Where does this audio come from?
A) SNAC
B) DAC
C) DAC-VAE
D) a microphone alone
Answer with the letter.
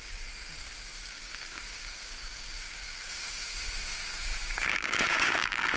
B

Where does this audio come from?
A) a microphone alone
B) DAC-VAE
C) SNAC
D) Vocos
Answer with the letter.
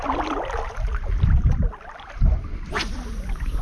A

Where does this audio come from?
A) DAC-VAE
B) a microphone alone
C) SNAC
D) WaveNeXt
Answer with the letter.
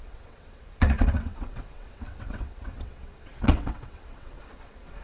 D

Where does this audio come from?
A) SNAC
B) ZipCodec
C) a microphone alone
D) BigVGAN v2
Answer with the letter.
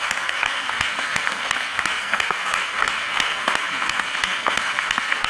A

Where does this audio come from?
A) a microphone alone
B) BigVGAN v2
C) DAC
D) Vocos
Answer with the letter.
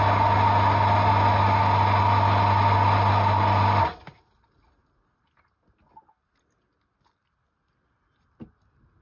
A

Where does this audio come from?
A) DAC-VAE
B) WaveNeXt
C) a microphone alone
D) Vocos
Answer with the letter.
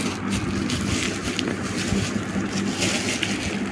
C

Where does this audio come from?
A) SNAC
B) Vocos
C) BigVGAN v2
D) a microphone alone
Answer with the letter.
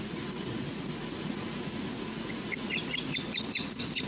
B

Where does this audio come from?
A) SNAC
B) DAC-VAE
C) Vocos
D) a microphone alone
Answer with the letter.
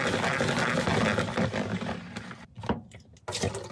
D